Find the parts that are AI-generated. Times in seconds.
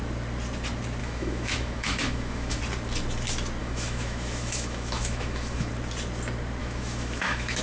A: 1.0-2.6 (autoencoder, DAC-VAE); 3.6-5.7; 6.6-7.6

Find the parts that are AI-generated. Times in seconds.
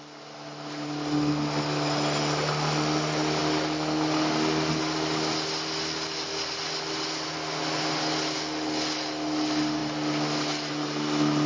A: none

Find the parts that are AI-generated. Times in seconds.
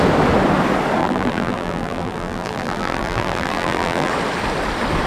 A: 1.0-4.1 (vocoder, BigVGAN v2)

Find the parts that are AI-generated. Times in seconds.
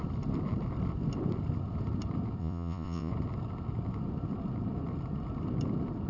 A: 2.4-3.1 (vocoder, Vocos)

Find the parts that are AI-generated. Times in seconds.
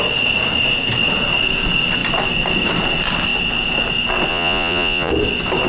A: 4.3-5.1 (vocoder, Vocos)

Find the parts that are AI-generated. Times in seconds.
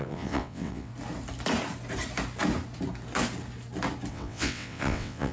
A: 0.0-0.9 (vocoder, WaveNeXt); 4.1-5.3